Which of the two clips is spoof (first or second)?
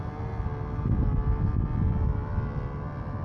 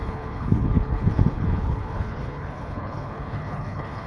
second